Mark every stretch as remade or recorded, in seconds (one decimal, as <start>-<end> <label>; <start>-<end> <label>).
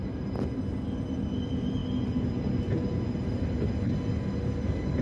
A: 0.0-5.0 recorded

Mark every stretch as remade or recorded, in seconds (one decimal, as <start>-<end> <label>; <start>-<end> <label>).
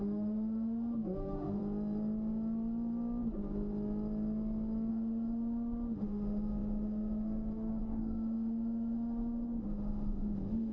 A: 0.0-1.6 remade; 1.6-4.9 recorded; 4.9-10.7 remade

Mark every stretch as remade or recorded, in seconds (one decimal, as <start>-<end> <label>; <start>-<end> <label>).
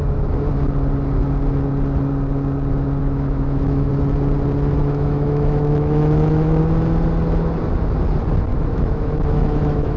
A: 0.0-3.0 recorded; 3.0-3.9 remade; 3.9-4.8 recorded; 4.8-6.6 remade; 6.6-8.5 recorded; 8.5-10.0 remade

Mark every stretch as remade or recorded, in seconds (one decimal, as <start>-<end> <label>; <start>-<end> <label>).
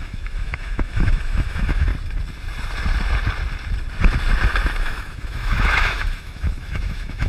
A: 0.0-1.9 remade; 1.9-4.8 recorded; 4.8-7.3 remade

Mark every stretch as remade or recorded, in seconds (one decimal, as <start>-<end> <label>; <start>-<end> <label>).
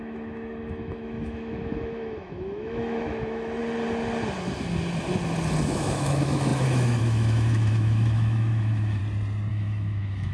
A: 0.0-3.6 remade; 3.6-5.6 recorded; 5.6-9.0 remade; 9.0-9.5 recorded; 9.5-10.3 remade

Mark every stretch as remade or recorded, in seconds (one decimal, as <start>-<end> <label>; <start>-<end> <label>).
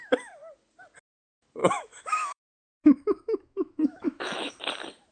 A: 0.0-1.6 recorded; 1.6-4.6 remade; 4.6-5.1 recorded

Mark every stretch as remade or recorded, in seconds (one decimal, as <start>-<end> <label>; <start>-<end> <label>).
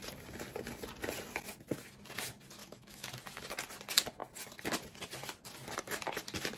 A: 0.0-2.6 recorded; 2.6-3.1 remade; 3.1-6.6 recorded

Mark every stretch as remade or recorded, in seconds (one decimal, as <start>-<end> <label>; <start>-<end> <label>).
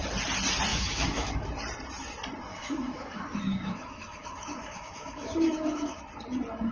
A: 0.0-0.7 recorded; 0.7-1.5 remade; 1.5-2.5 recorded; 2.5-6.0 remade; 6.0-6.7 recorded